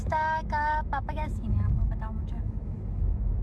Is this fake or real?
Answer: fake